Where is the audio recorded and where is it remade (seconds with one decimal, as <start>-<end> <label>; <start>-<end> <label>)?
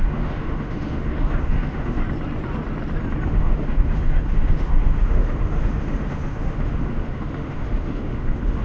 0.0-2.0 remade; 2.0-3.3 recorded; 3.3-8.6 remade